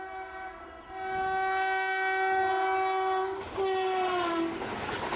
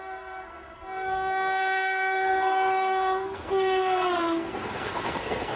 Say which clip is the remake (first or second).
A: second